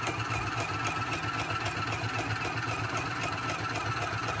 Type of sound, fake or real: real